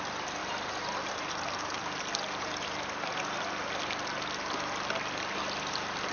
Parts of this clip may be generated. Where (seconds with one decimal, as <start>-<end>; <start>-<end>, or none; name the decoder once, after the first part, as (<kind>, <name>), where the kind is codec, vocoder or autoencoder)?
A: 0.4-1.8 (vocoder, BigVGAN v2)